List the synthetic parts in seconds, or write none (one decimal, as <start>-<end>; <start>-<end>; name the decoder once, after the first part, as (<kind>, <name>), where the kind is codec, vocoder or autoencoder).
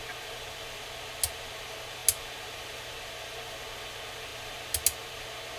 none